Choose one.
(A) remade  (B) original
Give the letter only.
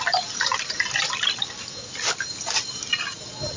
B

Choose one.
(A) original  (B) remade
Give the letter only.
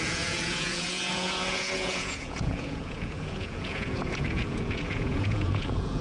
B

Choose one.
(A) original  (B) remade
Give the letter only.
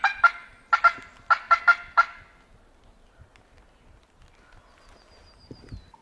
A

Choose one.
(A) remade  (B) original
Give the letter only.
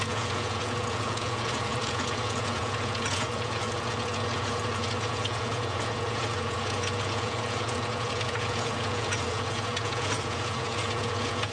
A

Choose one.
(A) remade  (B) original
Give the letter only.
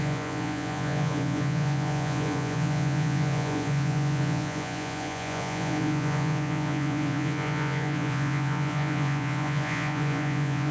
A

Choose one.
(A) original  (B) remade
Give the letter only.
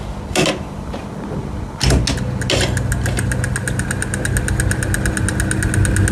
A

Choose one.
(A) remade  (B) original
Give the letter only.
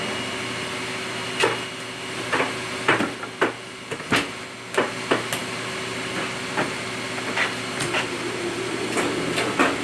B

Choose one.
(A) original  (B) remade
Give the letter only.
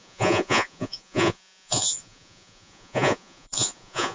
B